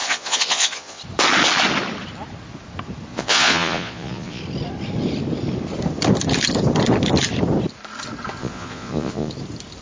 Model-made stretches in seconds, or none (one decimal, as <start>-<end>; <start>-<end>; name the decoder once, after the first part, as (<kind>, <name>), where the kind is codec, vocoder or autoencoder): 0.0-1.0 (vocoder, Vocos); 3.1-4.4; 8.4-9.3